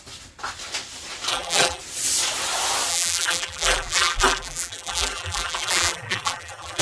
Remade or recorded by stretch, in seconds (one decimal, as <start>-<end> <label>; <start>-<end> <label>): 0.0-1.3 recorded; 1.3-1.8 remade; 1.8-2.9 recorded; 2.9-6.8 remade